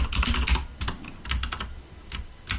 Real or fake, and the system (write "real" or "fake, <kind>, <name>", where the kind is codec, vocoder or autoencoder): real